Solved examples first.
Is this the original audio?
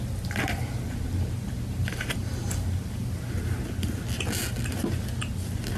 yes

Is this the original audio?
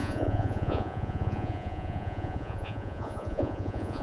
no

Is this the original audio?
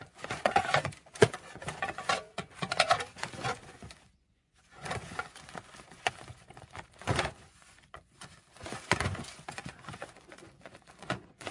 no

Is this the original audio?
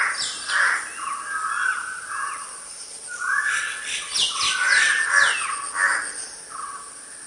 yes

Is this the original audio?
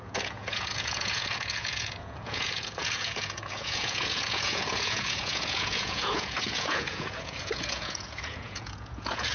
no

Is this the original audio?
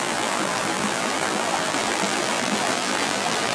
no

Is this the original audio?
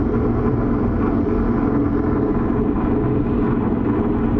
yes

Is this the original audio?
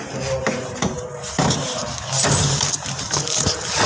no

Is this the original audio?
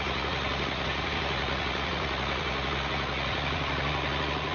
no